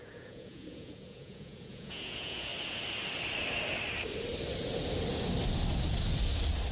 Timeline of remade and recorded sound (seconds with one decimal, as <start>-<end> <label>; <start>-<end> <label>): 0.0-2.5 remade; 2.5-6.7 recorded

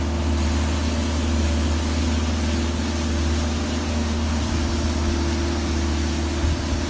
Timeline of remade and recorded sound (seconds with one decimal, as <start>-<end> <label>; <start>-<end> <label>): 0.0-3.9 recorded; 3.9-4.4 remade; 4.4-6.9 recorded

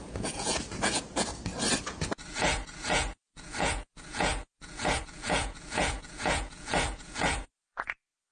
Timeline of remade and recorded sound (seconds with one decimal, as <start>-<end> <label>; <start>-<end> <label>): 0.0-1.3 remade; 1.3-1.8 recorded; 1.8-8.3 remade

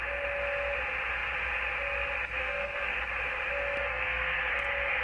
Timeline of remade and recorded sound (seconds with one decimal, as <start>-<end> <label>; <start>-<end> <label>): 0.0-2.4 recorded; 2.4-3.0 remade; 3.0-3.8 recorded; 3.8-4.5 remade; 4.5-5.0 recorded

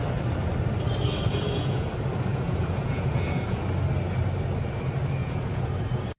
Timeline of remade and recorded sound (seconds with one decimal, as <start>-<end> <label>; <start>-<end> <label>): 0.0-1.3 recorded; 1.3-1.9 remade; 1.9-2.3 recorded; 2.3-3.6 remade; 3.6-5.2 recorded; 5.2-5.8 remade; 5.8-6.2 recorded